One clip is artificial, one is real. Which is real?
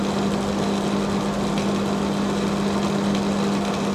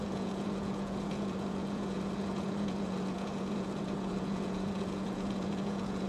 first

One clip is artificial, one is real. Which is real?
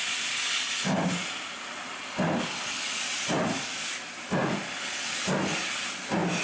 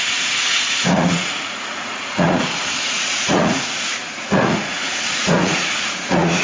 first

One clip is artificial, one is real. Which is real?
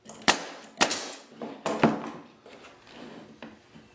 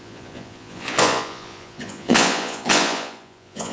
first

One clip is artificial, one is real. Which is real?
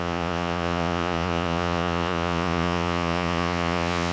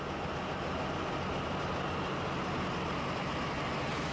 second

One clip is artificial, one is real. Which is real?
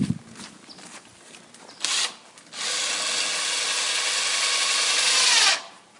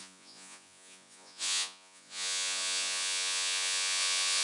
first